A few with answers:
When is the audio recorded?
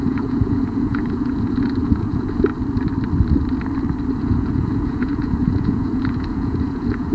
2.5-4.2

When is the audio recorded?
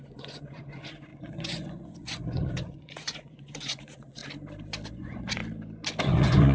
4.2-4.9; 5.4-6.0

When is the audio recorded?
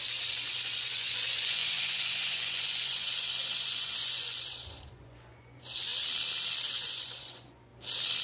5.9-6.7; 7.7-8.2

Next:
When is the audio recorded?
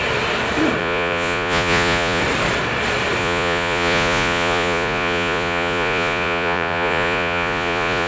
0.0-0.8; 2.2-3.2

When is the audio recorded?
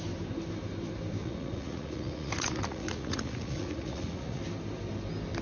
0.0-1.2; 4.4-5.4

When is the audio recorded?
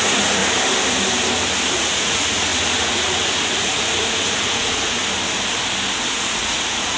0.4-1.8; 5.0-6.1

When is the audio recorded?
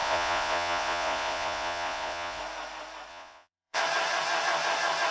2.4-3.1; 3.8-5.1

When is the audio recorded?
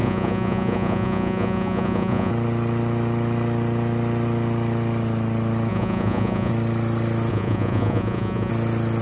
2.3-5.7; 6.5-7.3; 8.5-9.0